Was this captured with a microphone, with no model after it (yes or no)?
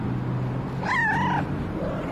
yes